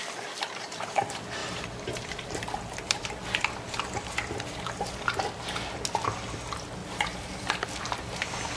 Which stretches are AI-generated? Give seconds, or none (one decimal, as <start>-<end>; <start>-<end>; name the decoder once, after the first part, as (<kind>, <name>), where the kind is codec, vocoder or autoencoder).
0.0-1.0 (vocoder, BigVGAN v2); 1.4-3.1; 6.8-8.6